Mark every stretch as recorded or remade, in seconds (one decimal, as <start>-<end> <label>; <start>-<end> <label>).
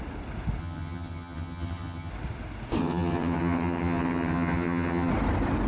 0.0-0.6 recorded; 0.6-2.1 remade; 2.1-2.8 recorded; 2.8-5.1 remade; 5.1-5.7 recorded